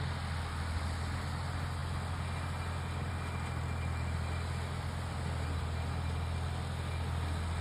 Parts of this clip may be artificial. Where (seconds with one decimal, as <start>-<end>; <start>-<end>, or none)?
none